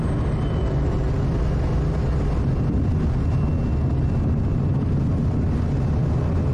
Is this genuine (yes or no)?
yes